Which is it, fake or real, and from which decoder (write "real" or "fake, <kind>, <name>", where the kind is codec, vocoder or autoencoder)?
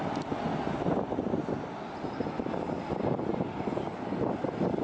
real